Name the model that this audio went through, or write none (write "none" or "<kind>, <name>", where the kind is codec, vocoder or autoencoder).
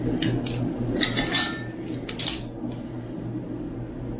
none